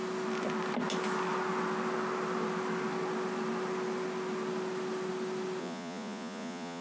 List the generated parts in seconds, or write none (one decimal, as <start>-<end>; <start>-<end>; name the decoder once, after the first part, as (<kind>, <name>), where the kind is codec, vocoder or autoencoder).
5.6-6.8 (vocoder, Vocos)